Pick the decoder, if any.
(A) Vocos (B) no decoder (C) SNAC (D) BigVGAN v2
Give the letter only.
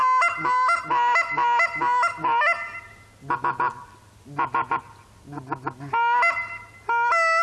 B